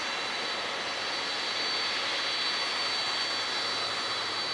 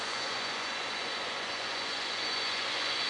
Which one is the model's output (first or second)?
second